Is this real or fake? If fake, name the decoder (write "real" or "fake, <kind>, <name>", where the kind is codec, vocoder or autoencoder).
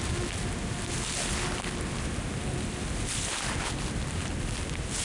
real